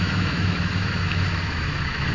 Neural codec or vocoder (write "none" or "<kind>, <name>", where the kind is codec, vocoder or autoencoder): autoencoder, DAC-VAE